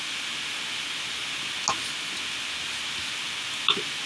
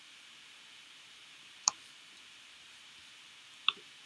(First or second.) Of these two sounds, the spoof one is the second